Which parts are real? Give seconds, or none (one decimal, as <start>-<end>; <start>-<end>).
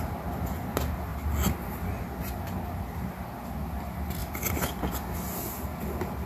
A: 0.0-6.3